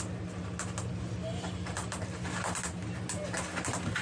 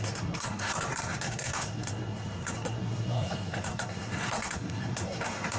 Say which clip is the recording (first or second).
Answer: first